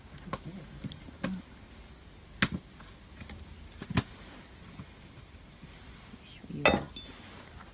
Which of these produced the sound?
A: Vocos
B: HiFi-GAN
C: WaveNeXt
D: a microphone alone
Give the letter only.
D